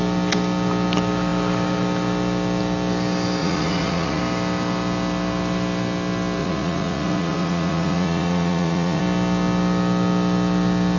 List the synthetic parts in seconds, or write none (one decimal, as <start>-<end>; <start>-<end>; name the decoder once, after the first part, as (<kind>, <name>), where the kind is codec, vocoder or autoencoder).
3.4-4.2 (vocoder, Vocos); 6.4-9.0